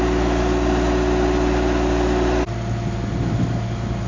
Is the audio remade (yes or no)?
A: no